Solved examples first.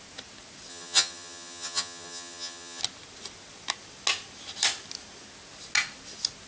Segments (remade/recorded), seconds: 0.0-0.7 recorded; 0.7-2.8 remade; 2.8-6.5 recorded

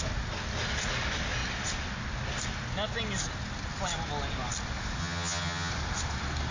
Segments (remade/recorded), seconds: 0.0-5.0 recorded; 5.0-5.7 remade; 5.7-6.5 recorded

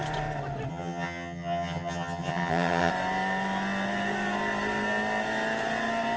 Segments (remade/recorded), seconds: 0.0-0.7 recorded; 0.7-2.9 remade; 2.9-6.2 recorded

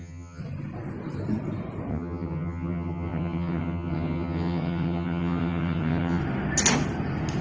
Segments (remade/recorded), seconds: 0.0-0.4 remade; 0.4-1.9 recorded; 1.9-6.2 remade; 6.2-7.4 recorded

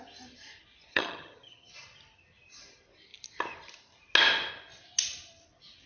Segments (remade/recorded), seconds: 0.0-0.9 recorded; 0.9-1.7 remade; 1.7-5.9 recorded